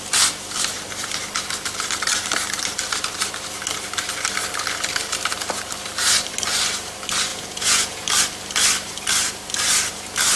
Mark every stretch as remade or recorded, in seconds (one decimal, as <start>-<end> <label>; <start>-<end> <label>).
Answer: 0.0-7.3 recorded; 7.3-8.0 remade; 8.0-10.4 recorded